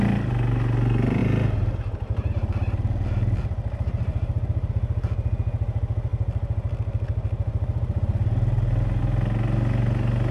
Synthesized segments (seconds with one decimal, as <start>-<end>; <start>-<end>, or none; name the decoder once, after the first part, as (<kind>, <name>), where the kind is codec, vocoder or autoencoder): 4.1-4.7 (vocoder, BigVGAN v2)